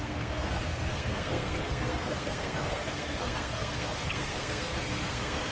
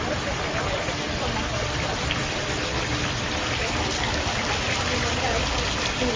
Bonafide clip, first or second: second